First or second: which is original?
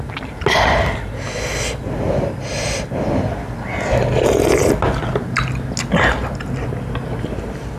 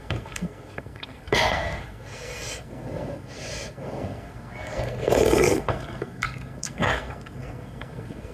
first